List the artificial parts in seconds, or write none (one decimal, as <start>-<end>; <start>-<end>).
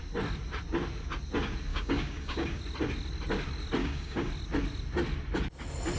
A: 1.7-2.6; 3.8-4.3